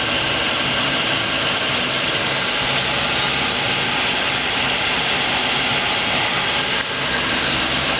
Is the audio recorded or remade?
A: recorded